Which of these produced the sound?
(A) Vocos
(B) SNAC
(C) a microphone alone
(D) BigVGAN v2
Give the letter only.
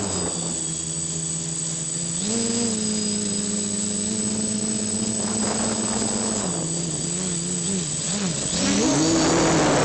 C